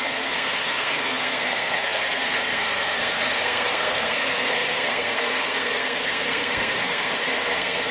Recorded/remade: remade